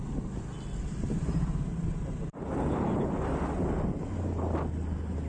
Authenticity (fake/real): real